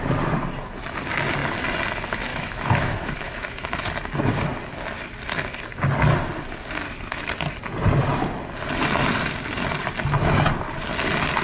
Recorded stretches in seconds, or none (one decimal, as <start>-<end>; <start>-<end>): 0.0-2.3; 3.9-11.4